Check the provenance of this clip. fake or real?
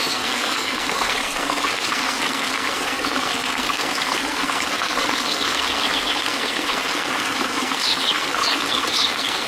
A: fake